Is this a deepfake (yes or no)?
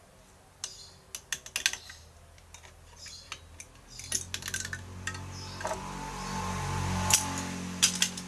no